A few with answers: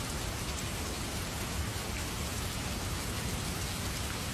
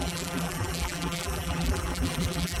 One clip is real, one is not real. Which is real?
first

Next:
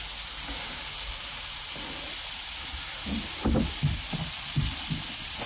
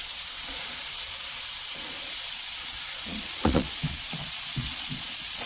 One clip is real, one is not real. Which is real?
first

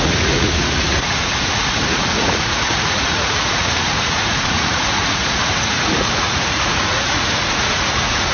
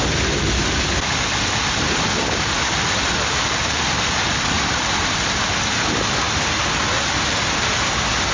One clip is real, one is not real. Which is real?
second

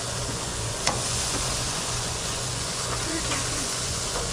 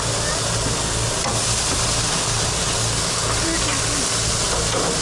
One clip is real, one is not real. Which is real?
second